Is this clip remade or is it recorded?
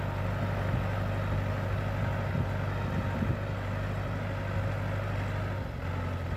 recorded